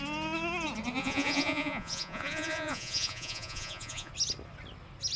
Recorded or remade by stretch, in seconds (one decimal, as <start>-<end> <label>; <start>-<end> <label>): 0.0-1.0 recorded; 1.0-4.1 remade; 4.1-5.2 recorded

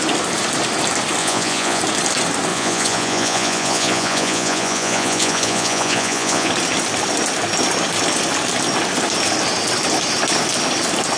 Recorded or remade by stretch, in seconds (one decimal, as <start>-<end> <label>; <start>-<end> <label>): 0.0-1.2 recorded; 1.2-1.8 remade; 1.8-2.5 recorded; 2.5-6.5 remade; 6.5-11.2 recorded

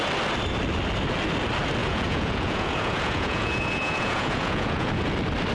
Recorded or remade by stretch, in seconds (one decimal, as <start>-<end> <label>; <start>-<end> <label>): 0.0-1.8 recorded; 1.8-5.1 remade; 5.1-5.5 recorded

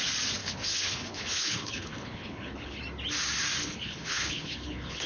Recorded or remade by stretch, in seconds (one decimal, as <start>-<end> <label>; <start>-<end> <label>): 0.0-0.4 recorded; 0.4-2.8 remade; 2.8-3.6 recorded; 3.6-5.1 remade

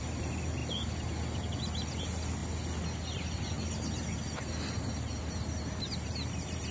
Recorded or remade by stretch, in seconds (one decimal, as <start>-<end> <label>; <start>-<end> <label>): 0.0-6.7 recorded